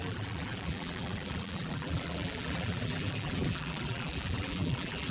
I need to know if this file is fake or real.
fake